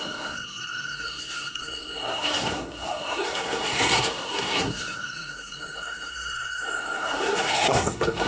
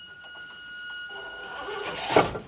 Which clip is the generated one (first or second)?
first